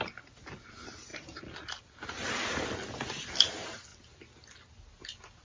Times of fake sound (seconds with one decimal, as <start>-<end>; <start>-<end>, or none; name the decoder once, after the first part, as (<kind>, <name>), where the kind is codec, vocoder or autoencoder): none